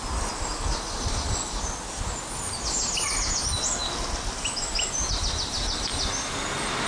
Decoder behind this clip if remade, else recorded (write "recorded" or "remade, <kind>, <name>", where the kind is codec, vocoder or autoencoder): recorded